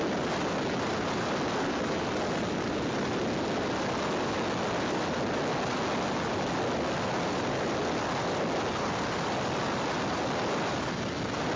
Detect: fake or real real